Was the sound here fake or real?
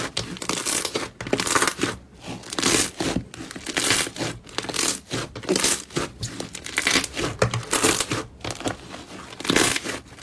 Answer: real